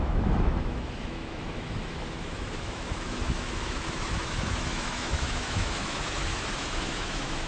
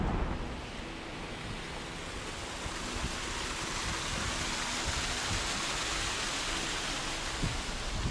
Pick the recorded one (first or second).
second